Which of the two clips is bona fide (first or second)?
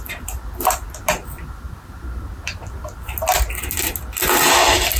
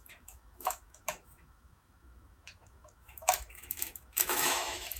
first